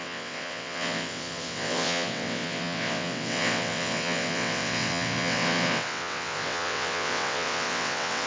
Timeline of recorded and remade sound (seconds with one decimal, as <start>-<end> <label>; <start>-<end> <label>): 0.0-8.3 remade